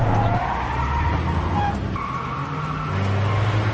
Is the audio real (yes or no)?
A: yes